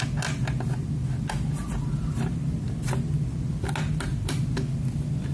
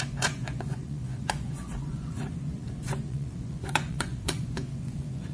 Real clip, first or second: first